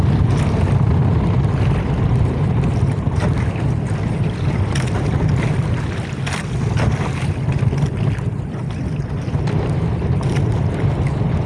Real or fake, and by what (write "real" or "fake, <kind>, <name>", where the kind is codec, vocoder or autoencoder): real